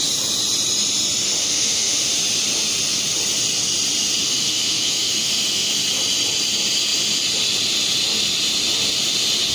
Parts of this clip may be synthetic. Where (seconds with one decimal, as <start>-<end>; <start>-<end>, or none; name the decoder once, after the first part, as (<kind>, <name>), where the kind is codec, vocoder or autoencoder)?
1.4-2.1 (autoencoder, DAC-VAE); 4.2-5.7